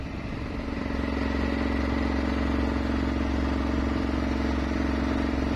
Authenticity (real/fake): real